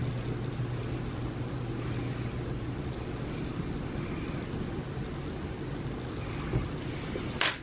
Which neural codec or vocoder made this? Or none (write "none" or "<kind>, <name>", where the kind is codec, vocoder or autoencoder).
none